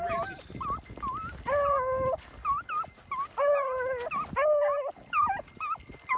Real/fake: real